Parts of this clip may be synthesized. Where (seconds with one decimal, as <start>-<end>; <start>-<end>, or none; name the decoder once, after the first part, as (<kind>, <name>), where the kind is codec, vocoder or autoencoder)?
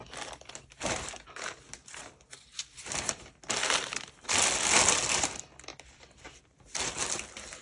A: none